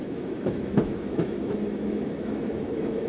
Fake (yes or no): yes